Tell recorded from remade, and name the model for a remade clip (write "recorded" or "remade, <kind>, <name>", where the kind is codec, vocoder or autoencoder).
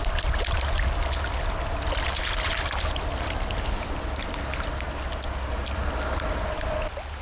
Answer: recorded